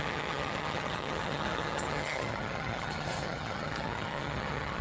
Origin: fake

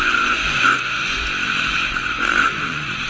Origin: fake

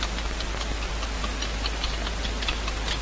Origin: real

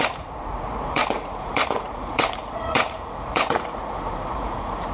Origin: fake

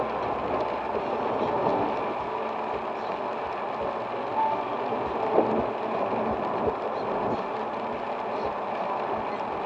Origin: real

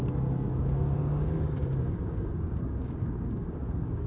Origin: fake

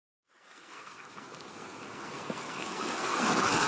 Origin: fake